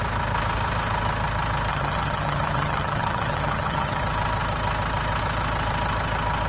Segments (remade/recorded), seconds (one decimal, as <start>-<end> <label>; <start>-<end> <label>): 0.0-1.7 recorded; 1.7-4.0 remade; 4.0-6.5 recorded